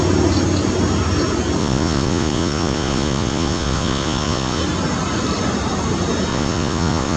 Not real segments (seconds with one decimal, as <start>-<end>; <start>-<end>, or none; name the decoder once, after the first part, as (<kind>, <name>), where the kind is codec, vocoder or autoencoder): 1.6-4.6 (vocoder, Vocos); 6.3-7.2